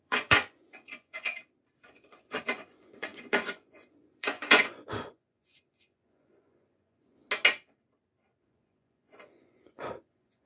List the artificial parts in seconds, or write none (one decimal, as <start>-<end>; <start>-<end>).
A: 0.0-1.3; 1.9-7.2; 8.4-10.5